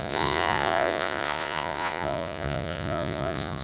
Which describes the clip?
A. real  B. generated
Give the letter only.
B